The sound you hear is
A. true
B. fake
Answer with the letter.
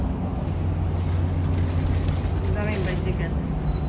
A